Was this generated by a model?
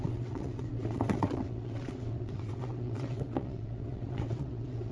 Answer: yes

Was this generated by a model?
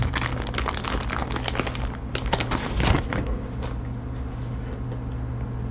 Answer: no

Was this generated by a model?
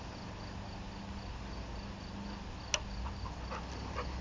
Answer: no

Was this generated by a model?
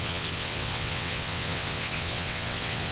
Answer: yes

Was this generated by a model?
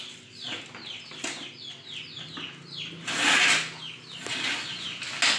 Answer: no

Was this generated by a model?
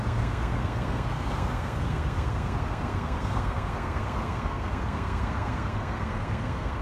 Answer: yes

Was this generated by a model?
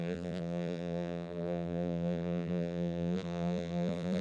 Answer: yes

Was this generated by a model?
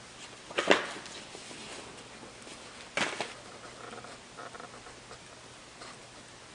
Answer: no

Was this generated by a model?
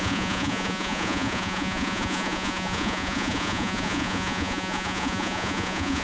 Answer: yes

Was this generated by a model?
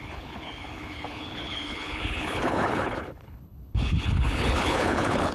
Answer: yes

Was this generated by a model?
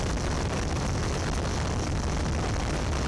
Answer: yes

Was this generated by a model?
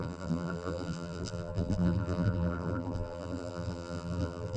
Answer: yes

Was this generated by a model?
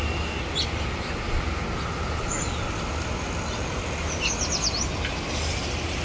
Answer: no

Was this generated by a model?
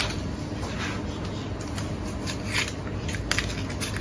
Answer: no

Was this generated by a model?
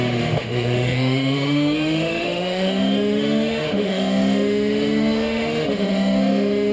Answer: yes